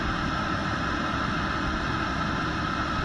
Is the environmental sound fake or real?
real